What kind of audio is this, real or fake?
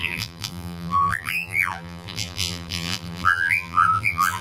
fake